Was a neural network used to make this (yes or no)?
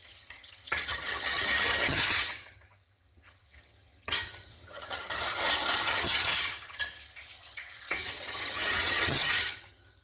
yes